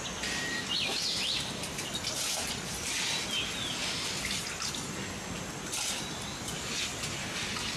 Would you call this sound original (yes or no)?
yes